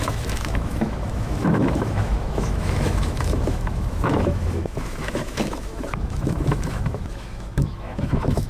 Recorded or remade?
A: remade